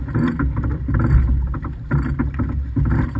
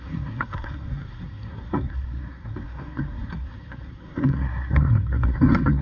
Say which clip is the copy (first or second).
second